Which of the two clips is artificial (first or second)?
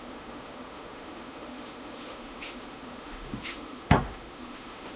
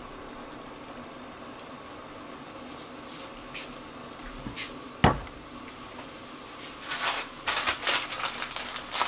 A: first